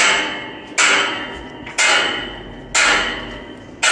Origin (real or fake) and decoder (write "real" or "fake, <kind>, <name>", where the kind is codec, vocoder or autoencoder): real